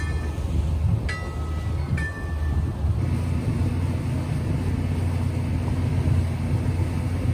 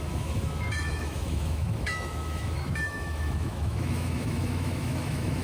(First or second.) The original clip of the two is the first